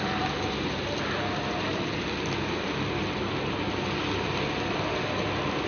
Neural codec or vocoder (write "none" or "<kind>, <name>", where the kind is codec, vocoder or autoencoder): none